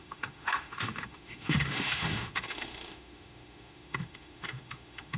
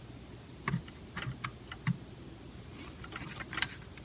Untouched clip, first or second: second